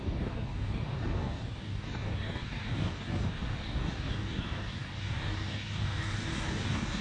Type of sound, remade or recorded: remade